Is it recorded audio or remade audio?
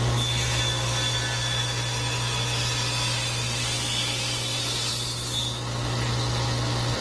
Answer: recorded